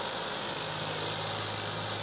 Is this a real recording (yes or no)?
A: yes